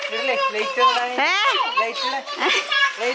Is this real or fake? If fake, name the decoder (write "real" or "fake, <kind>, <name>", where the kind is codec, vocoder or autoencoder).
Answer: real